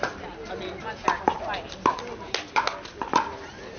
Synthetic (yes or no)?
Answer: no